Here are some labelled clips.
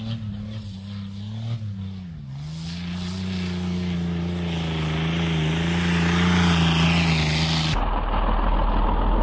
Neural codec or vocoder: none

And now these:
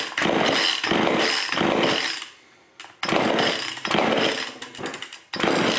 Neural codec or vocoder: none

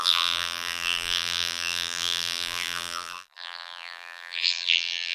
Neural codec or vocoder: vocoder, BigVGAN v2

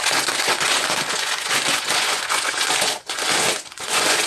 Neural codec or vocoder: vocoder, Vocos